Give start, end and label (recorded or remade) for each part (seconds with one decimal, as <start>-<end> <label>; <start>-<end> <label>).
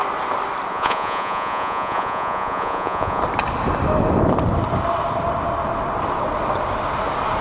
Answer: 0.0-0.7 recorded; 0.7-3.2 remade; 3.2-7.4 recorded